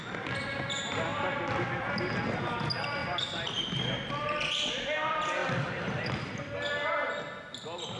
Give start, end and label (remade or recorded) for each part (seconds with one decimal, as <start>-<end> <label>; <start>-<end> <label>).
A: 0.0-5.4 recorded; 5.4-7.1 remade; 7.1-8.0 recorded